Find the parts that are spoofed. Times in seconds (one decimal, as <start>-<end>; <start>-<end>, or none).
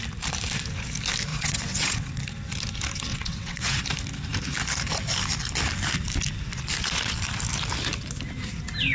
1.3-2.2; 3.1-3.8